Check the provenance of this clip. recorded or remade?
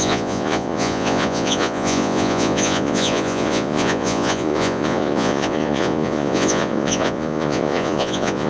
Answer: remade